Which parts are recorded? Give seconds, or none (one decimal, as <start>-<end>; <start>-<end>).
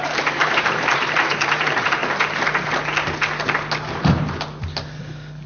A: 2.0-5.5